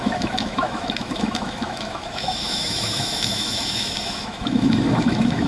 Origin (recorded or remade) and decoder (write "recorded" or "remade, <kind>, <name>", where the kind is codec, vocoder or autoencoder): remade, autoencoder, DAC-VAE